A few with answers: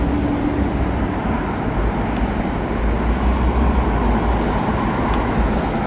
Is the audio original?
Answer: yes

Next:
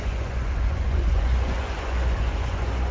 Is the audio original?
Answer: no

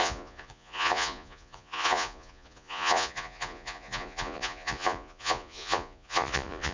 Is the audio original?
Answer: no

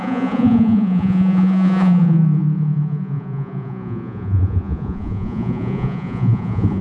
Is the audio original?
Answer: no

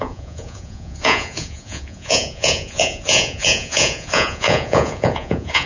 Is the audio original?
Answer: no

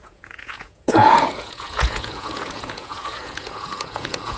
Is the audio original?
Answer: no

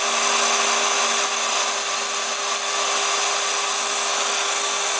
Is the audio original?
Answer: yes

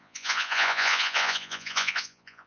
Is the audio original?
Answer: no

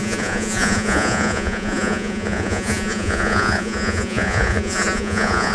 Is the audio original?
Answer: no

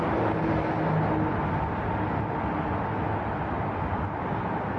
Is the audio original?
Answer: yes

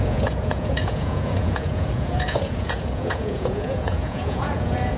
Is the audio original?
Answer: no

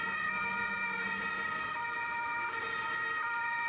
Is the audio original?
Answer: yes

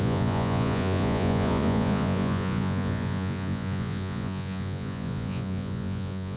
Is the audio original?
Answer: no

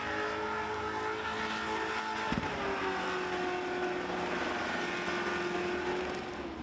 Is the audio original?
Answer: yes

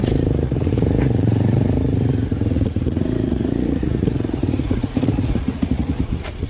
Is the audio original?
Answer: no